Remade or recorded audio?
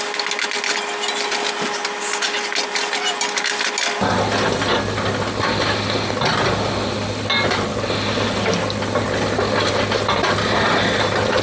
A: recorded